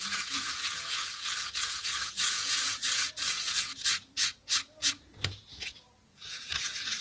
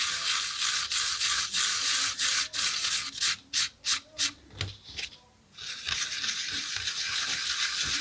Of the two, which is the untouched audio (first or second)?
second